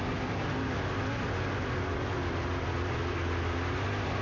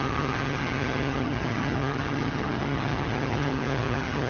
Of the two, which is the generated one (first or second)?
second